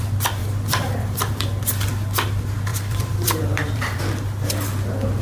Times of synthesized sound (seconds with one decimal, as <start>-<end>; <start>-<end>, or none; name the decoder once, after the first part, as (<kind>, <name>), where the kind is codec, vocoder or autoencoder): 0.4-1.3 (vocoder, BigVGAN v2); 2.7-4.0